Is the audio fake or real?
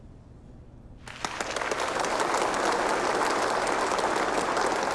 real